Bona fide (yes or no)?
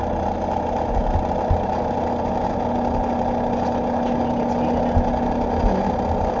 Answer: yes